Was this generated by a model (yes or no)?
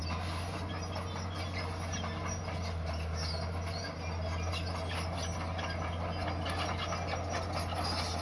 no